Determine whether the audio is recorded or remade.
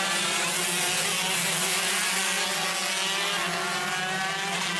recorded